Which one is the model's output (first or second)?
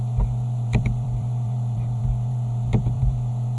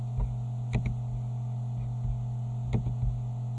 first